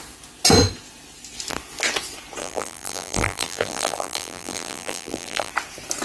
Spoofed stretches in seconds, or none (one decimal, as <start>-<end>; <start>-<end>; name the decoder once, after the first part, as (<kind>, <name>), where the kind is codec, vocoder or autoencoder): 2.4-5.5 (vocoder, BigVGAN v2)